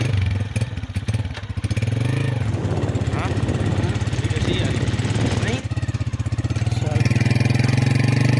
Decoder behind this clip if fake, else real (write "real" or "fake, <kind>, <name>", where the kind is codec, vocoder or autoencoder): real